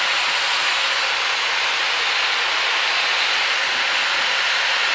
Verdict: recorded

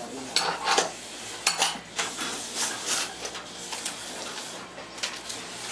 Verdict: recorded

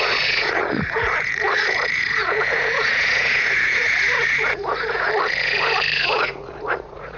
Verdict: remade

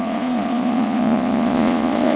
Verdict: remade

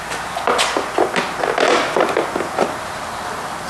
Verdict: recorded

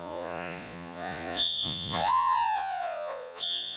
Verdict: remade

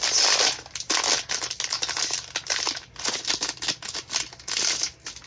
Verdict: recorded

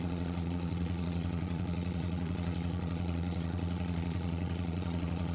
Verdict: remade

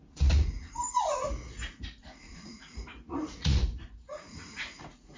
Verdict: remade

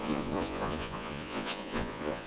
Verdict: remade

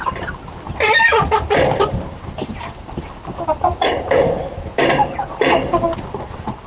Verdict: recorded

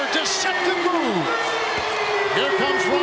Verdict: recorded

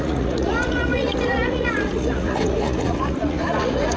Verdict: remade